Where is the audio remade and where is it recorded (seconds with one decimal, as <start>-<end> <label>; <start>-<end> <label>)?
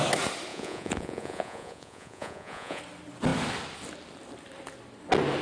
0.0-0.5 recorded; 0.5-2.8 remade; 2.8-5.4 recorded